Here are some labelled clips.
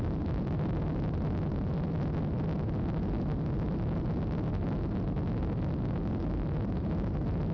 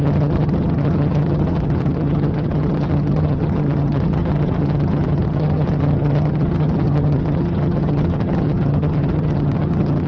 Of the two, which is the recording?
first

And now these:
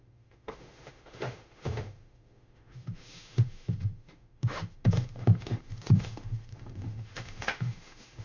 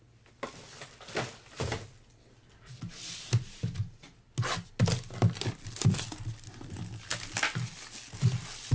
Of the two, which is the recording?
second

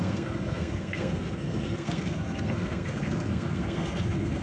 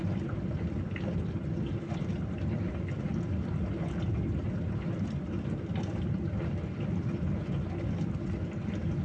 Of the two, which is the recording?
second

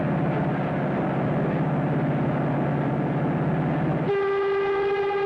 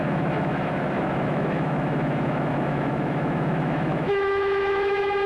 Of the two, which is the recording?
first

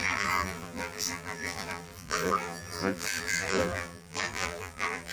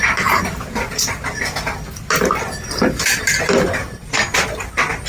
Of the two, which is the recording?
second